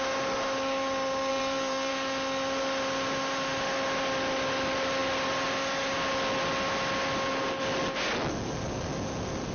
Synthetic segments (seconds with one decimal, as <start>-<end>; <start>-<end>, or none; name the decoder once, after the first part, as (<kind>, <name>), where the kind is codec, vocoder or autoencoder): 1.3-1.9 (vocoder, BigVGAN v2)